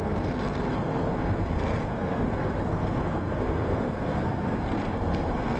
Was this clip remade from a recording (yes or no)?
yes